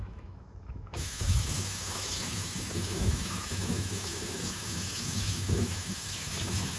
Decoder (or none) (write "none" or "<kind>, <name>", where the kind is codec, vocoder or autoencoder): autoencoder, DAC-VAE